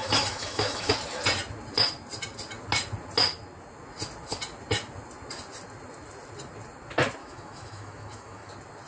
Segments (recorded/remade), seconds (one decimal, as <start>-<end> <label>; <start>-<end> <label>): 0.0-0.9 remade; 0.9-7.2 recorded; 7.2-8.5 remade; 8.5-8.9 recorded